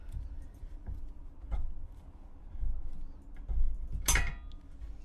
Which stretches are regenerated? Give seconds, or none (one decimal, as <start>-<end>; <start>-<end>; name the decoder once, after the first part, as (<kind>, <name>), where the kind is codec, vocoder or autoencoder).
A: 0.0-1.0 (vocoder, BigVGAN v2)